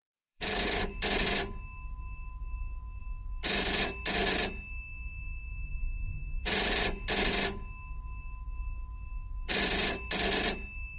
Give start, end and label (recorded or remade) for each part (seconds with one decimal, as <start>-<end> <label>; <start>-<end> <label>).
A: 0.0-0.9 remade; 0.9-11.0 recorded